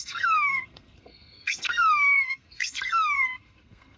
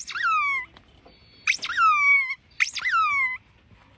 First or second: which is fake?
first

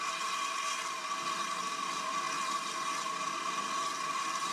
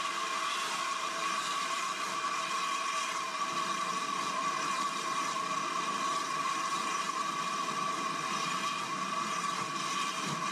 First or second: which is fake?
second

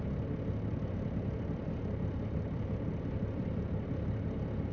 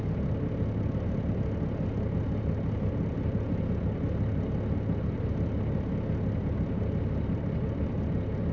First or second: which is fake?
first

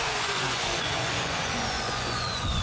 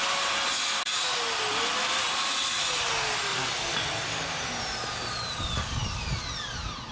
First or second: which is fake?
first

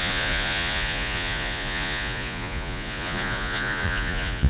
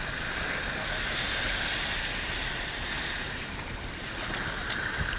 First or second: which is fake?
first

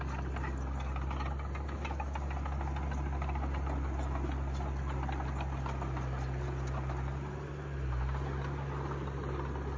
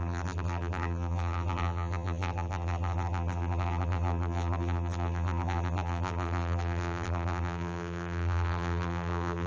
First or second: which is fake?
second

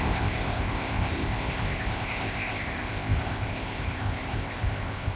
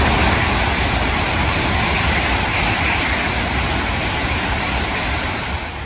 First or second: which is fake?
first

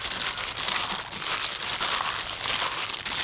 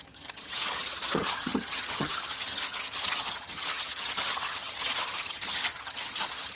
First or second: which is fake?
second